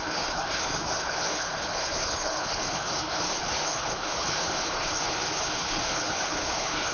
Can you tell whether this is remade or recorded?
remade